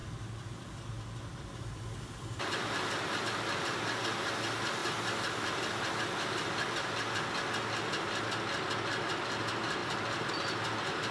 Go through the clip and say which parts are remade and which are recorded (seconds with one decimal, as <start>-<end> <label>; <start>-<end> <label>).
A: 0.0-3.2 remade; 3.2-4.8 recorded; 4.8-6.0 remade; 6.0-9.8 recorded; 9.8-10.3 remade; 10.3-11.1 recorded